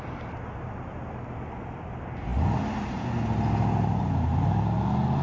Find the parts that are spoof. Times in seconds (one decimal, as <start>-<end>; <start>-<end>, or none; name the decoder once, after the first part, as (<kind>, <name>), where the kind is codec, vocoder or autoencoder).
none